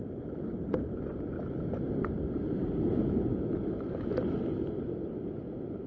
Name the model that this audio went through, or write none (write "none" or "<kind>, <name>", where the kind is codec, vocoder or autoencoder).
none